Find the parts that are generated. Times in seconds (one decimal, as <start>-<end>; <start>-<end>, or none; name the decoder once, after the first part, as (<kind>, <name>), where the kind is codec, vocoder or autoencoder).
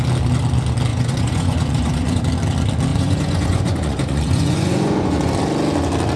0.9-2.2 (vocoder, Vocos); 2.9-5.3